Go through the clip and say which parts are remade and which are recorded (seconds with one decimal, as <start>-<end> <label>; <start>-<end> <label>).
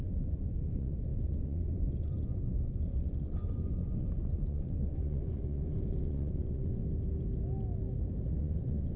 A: 0.0-6.8 remade; 6.8-8.3 recorded; 8.3-9.0 remade